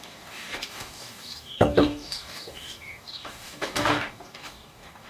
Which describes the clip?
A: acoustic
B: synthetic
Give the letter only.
B